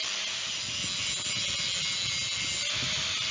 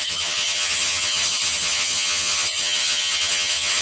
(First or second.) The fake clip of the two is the second